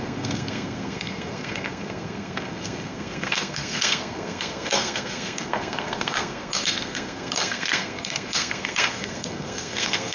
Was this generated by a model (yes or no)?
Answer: yes